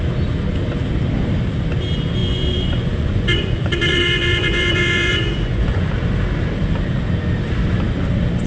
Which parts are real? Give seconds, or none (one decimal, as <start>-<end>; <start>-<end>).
0.0-2.2; 5.9-8.5